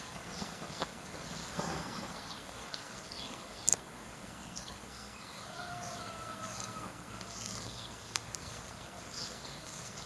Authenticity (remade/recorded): remade